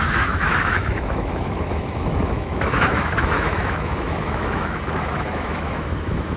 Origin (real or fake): fake